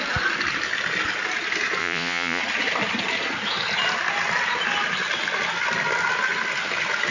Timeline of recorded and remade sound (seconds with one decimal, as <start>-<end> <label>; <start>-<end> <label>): 0.0-1.8 recorded; 1.8-2.4 remade; 2.4-7.1 recorded